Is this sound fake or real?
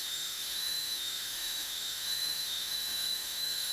fake